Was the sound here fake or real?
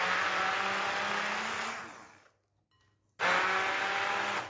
real